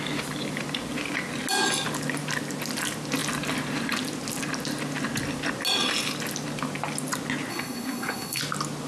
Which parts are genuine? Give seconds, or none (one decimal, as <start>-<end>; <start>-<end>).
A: 0.0-7.5; 8.4-8.9